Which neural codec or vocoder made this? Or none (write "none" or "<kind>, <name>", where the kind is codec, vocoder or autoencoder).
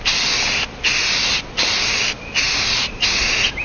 none